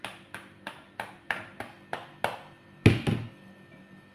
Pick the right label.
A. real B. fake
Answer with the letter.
A